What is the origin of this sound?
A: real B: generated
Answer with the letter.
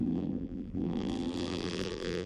B